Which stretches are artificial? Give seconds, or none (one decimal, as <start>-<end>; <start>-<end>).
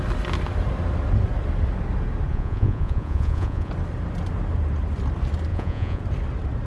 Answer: 2.3-3.7; 5.5-6.0